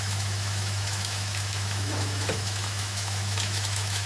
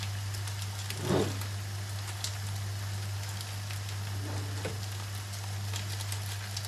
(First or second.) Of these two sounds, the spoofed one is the first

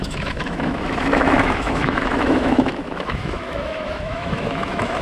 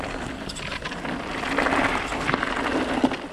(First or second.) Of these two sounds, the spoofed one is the first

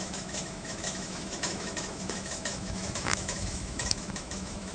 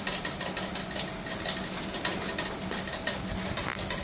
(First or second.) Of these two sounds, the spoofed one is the first